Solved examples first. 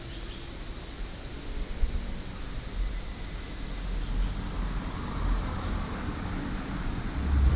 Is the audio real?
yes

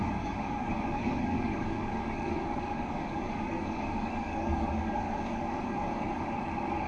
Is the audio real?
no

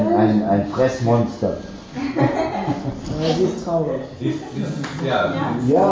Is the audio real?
yes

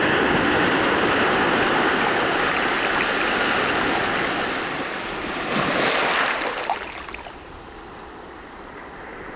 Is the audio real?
yes